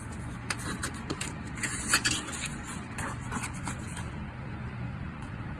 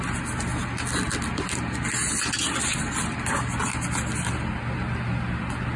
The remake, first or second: first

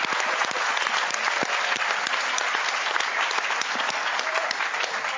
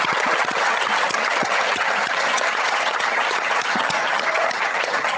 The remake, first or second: second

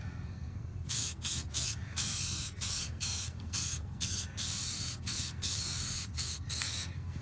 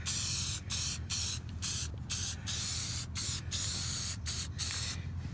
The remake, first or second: first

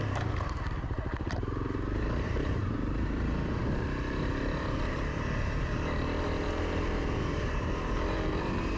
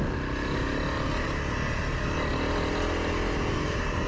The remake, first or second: first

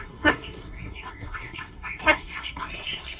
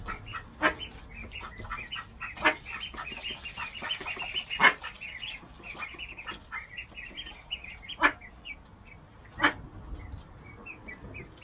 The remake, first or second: first